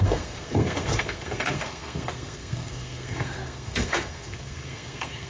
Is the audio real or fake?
fake